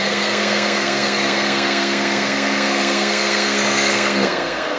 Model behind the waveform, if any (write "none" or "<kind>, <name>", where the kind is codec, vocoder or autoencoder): codec, SNAC